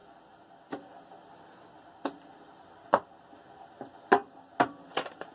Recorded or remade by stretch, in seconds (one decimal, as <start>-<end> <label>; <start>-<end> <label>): 0.0-5.3 recorded